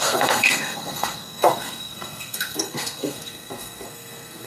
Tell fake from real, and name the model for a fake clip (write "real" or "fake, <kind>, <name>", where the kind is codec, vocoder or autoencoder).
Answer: fake, codec, SNAC